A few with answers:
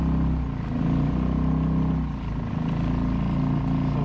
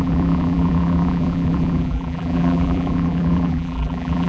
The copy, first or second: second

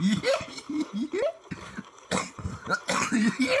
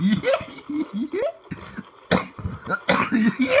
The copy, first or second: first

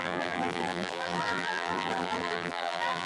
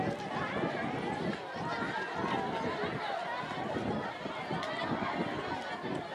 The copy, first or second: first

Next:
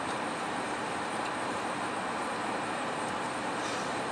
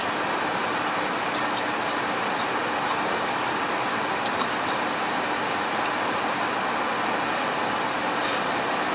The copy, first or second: first